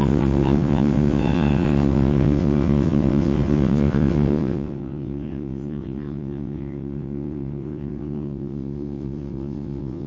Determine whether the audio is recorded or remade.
remade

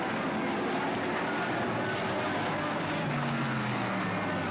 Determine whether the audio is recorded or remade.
recorded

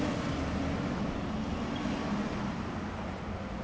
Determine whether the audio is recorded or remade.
recorded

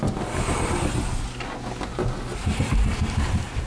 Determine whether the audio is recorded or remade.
recorded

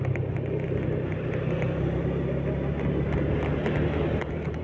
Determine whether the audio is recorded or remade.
recorded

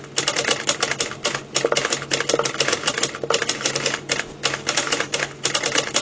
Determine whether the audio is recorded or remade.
recorded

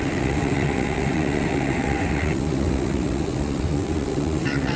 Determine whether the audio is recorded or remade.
remade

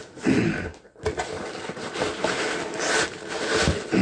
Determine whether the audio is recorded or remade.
recorded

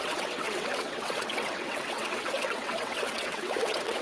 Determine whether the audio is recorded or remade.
remade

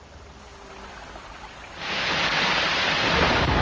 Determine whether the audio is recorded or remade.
recorded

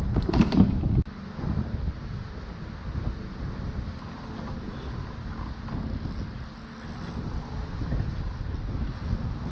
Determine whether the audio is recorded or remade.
recorded